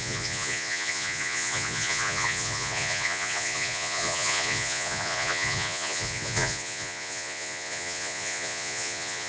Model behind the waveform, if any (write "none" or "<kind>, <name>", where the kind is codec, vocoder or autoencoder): vocoder, Vocos